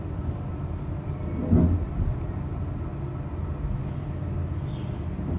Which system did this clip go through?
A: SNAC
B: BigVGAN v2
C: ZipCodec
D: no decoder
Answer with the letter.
D